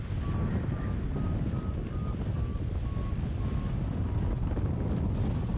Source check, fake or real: real